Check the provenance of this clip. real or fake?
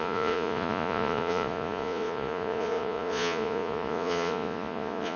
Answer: fake